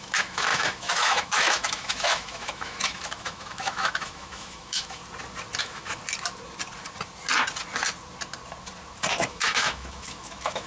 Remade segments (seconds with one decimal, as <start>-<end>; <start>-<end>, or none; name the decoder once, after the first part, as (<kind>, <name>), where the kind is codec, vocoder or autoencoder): 0.0-5.0 (autoencoder, DAC-VAE); 5.6-6.0; 9.1-10.7